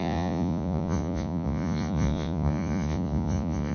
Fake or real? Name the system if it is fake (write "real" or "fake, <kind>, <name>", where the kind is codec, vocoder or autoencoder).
fake, vocoder, Vocos